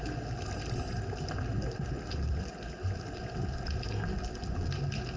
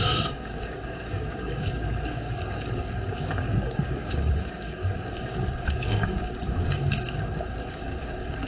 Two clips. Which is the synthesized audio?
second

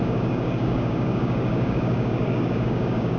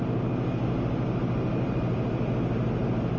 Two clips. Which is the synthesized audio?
first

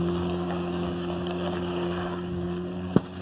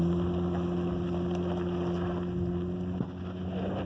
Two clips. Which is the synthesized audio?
first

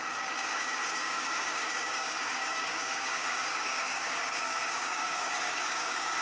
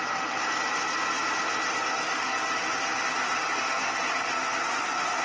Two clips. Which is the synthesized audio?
first